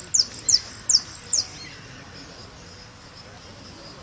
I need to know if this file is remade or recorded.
recorded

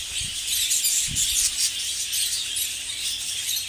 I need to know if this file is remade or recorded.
recorded